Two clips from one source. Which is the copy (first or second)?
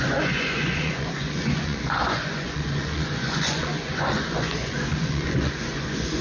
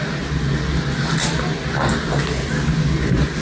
first